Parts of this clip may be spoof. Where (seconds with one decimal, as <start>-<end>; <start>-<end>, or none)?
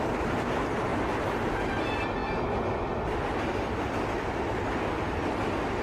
0.9-1.5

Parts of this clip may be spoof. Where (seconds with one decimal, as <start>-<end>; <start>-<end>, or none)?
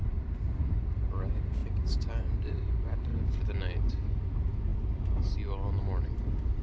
0.0-4.7; 5.8-6.6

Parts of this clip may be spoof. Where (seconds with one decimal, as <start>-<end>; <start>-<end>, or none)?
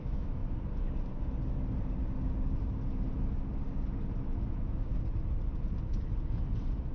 0.0-0.4; 4.5-4.9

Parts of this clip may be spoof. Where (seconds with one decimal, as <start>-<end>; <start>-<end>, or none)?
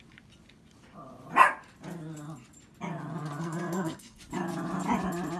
3.4-4.2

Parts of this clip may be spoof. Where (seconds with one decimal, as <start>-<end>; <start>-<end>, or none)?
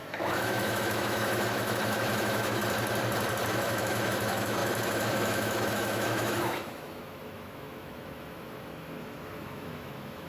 0.0-2.6; 3.5-10.3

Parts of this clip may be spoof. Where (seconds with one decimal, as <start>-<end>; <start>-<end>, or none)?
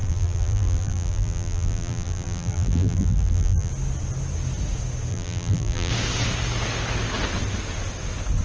0.0-3.7; 5.1-5.9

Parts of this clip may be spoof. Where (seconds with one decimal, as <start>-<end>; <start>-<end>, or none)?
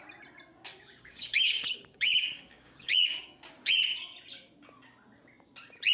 0.5-3.7